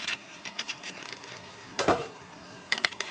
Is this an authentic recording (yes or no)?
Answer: no